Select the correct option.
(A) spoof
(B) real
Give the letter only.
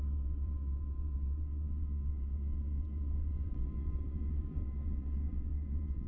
A